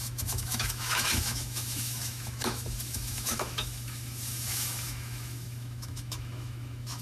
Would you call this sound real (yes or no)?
no